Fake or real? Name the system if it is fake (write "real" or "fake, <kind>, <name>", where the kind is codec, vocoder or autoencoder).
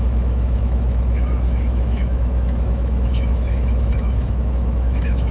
fake, autoencoder, DAC-VAE